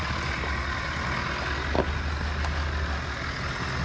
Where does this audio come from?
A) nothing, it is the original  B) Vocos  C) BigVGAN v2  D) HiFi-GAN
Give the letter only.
A